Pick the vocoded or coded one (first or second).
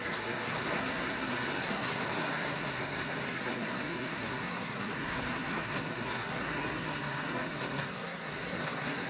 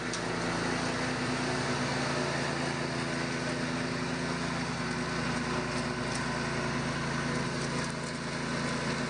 first